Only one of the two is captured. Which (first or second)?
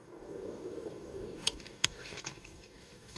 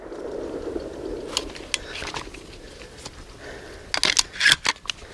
second